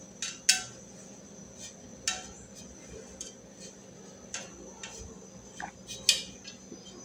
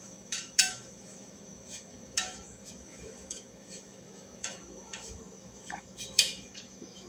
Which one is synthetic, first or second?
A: second